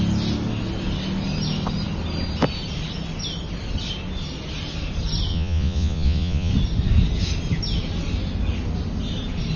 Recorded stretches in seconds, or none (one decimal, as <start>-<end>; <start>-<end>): 0.0-5.3; 6.5-9.6